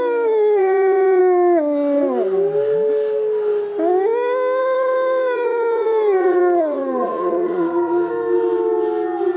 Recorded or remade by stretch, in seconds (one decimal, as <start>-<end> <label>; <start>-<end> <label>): 0.0-0.6 recorded; 0.6-1.2 remade; 1.2-4.6 recorded; 4.6-8.1 remade; 8.1-9.4 recorded